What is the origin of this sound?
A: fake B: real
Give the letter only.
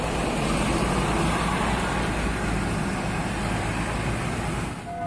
B